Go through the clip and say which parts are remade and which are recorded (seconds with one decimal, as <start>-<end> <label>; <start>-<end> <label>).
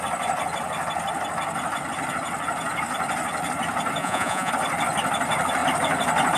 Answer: 0.0-4.0 recorded; 4.0-4.5 remade; 4.5-6.4 recorded